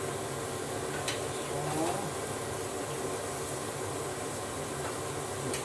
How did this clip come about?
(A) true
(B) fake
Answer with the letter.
A